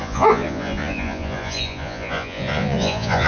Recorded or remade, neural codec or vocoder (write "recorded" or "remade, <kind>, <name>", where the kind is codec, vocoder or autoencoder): remade, vocoder, Vocos